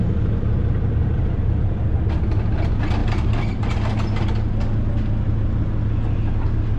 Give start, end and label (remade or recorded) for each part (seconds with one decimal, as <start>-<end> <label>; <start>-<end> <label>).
0.0-1.0 recorded; 1.0-1.8 remade; 1.8-3.0 recorded; 3.0-3.7 remade; 3.7-6.8 recorded